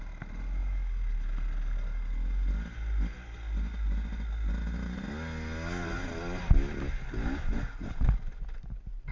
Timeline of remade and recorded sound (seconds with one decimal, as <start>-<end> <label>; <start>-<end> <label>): 0.0-9.1 recorded